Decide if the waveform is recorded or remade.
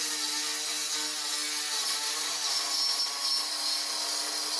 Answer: recorded